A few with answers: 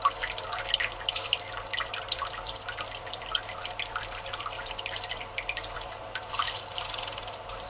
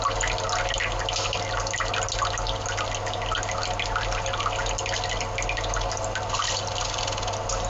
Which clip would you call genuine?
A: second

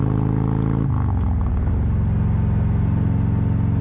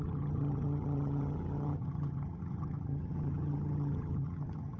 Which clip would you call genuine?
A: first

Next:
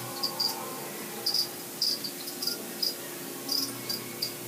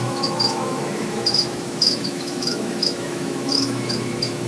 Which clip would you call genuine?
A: first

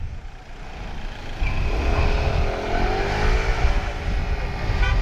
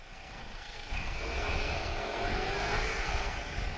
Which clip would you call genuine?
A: first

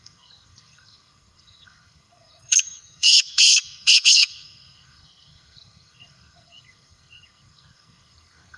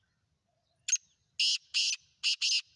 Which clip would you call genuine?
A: second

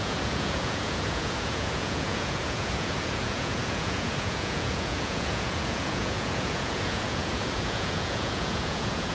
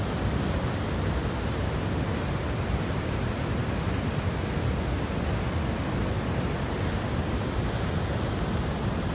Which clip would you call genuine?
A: second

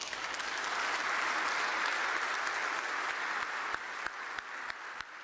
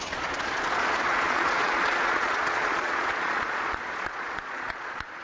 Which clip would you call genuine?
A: first